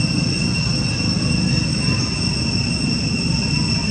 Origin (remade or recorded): recorded